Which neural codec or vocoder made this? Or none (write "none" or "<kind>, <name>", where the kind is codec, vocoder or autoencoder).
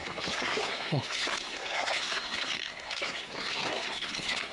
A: codec, SNAC